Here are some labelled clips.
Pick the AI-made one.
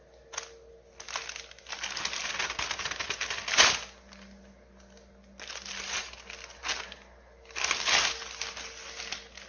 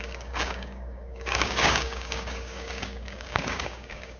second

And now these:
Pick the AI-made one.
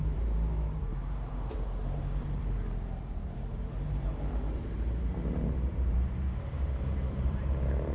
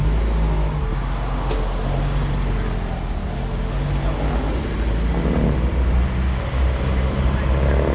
first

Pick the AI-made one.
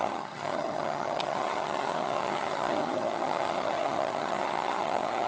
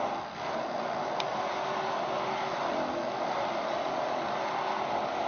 first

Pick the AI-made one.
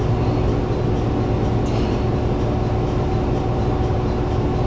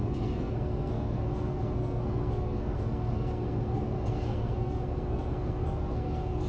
second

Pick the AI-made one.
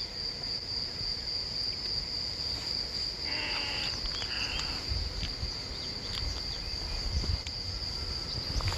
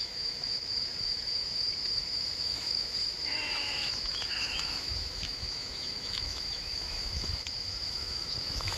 second